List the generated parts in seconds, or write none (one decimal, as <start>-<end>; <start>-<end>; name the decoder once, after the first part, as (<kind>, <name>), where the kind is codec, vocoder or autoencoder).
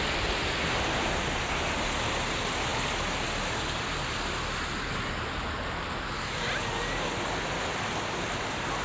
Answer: none